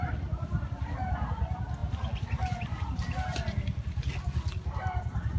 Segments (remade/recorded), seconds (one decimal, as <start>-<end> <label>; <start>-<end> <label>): 0.0-5.4 recorded